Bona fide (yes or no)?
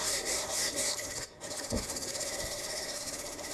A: no